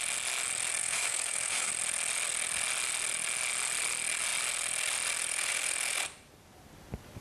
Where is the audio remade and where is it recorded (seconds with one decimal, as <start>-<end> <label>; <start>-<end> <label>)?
0.0-0.8 recorded; 0.8-1.7 remade; 1.7-7.2 recorded